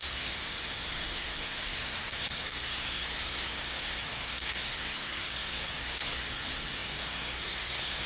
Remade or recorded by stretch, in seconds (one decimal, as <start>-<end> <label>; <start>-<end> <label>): 0.0-0.4 remade; 0.4-0.9 recorded; 0.9-8.1 remade